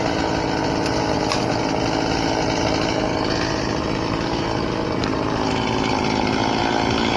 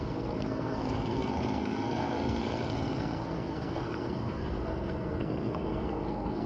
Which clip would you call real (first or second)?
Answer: first